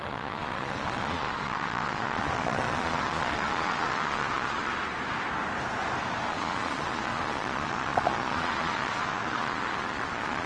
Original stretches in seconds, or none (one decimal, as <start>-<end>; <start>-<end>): 4.7-6.3